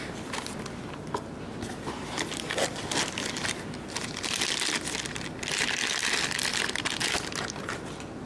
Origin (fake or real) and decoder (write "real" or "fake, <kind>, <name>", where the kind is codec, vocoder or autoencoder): real